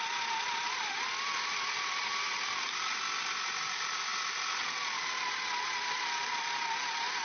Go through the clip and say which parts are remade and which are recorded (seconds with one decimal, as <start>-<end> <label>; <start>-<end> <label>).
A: 0.0-7.2 recorded